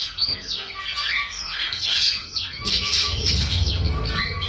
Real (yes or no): no